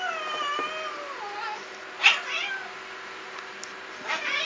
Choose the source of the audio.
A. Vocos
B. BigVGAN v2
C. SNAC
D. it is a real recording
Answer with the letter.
D